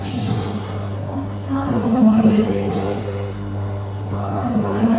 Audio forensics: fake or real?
fake